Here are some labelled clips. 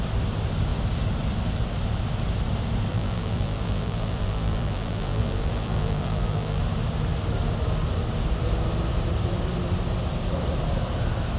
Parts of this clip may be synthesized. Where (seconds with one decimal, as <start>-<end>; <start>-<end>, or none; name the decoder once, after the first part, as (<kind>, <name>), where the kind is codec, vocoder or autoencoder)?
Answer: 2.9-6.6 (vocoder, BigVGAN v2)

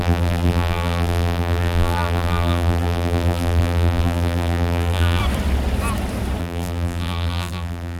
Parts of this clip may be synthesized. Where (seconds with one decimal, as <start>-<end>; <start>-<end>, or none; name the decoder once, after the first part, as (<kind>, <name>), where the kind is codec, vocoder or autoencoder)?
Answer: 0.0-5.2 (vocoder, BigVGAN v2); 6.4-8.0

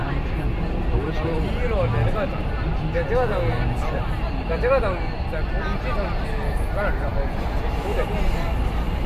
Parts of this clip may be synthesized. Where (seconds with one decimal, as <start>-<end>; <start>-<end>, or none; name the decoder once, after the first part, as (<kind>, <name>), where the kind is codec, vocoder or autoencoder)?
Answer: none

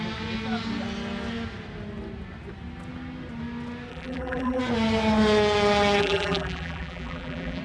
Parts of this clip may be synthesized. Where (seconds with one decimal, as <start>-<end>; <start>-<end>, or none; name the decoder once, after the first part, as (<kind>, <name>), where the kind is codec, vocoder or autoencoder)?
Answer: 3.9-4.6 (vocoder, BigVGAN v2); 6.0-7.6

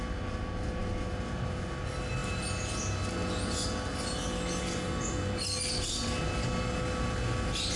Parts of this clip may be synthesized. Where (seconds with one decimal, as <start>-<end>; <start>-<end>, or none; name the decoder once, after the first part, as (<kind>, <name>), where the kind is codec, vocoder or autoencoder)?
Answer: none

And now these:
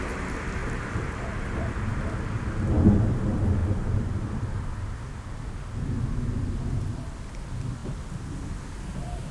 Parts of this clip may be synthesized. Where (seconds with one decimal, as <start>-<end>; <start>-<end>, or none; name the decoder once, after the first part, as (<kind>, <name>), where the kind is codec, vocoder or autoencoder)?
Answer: 0.6-1.1 (vocoder, BigVGAN v2)

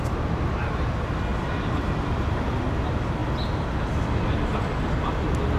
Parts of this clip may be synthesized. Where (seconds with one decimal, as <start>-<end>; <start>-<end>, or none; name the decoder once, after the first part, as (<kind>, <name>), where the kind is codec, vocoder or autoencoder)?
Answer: 1.3-2.6 (vocoder, BigVGAN v2)